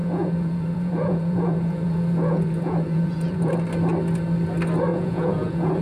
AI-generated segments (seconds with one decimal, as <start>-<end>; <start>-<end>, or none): 0.0-3.5; 4.9-5.8